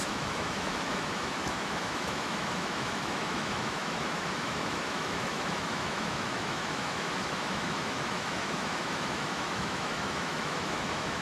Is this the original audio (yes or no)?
no